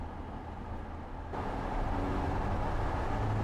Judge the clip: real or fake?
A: real